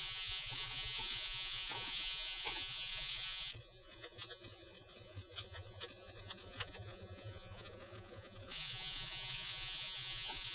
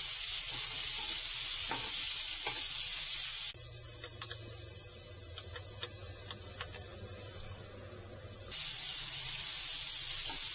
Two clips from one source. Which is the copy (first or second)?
first